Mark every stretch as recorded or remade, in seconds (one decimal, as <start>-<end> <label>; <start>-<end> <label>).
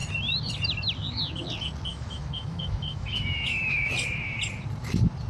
0.0-1.9 recorded; 1.9-3.9 remade; 3.9-5.3 recorded